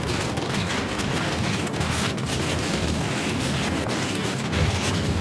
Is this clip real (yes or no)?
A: no